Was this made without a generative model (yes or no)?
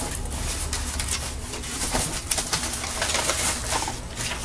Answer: yes